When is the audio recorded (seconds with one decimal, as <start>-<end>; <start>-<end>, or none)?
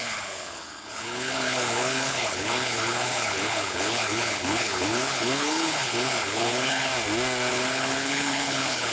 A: 6.9-7.5